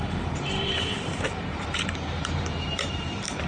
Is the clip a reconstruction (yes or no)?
yes